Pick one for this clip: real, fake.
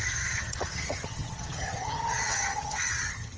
fake